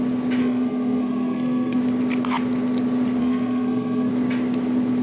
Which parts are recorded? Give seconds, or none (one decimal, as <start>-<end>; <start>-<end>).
0.0-0.4; 1.8-3.2; 4.1-5.0